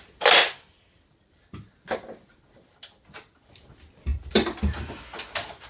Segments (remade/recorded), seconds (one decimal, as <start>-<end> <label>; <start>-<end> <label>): 0.0-5.7 recorded